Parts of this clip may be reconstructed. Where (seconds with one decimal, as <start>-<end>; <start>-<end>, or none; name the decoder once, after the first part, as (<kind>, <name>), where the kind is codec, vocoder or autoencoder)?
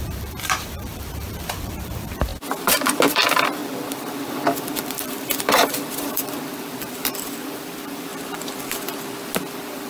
0.0-2.3 (vocoder, BigVGAN v2); 3.1-8.1; 9.5-9.9